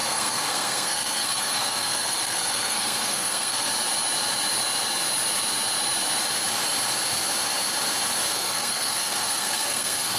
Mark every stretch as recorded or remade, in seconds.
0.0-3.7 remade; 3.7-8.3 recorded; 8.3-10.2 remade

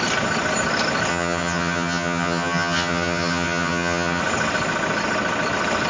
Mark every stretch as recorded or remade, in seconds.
0.0-1.1 recorded; 1.1-4.2 remade; 4.2-5.9 recorded